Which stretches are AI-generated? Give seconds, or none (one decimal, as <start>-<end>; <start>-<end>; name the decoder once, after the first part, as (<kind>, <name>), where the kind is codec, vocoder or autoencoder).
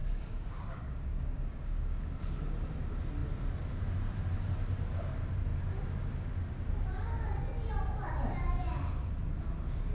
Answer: 0.0-2.0 (codec, DAC)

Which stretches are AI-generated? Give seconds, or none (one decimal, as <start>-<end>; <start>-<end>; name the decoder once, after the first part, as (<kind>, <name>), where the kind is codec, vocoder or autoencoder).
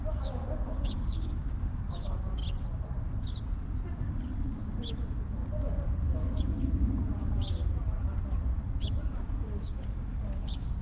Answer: 0.0-2.4 (codec, DAC); 4.0-5.4; 6.4-7.6; 8.8-10.8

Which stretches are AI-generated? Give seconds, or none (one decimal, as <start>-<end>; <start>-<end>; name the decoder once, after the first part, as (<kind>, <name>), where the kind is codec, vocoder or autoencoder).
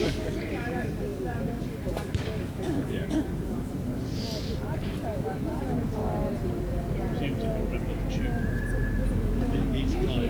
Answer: 0.0-6.0 (codec, DAC); 9.1-10.3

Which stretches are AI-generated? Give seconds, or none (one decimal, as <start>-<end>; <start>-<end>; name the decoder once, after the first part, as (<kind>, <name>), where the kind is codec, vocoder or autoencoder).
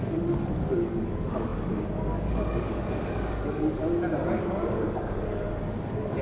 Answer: 0.0-3.8 (codec, DAC); 4.4-6.2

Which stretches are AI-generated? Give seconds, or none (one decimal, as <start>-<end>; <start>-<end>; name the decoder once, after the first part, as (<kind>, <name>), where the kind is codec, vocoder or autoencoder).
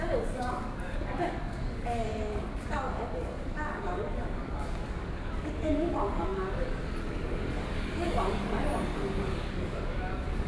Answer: 0.0-10.5 (codec, DAC)